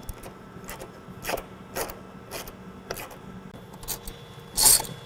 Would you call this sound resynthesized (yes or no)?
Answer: no